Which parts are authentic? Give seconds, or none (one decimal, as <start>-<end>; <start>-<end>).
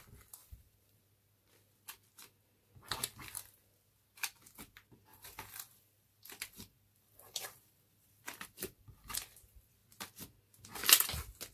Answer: 0.0-0.4; 1.0-5.1; 9.3-11.5